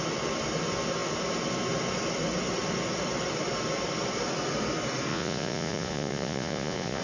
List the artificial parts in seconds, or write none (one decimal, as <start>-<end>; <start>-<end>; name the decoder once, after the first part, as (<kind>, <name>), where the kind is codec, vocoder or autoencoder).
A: 5.1-7.0 (vocoder, Vocos)